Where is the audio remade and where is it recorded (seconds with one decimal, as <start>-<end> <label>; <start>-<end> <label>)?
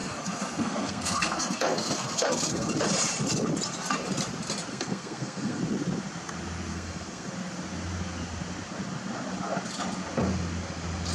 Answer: 0.0-2.7 remade; 2.7-4.7 recorded; 4.7-5.6 remade; 5.6-6.7 recorded; 6.7-7.3 remade; 7.3-11.1 recorded